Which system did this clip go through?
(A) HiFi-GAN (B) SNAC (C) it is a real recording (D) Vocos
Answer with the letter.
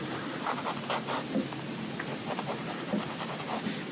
C